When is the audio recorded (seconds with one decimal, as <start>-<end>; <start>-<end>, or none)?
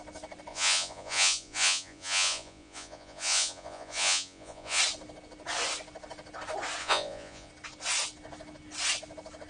0.0-0.5; 4.8-6.8; 7.5-9.5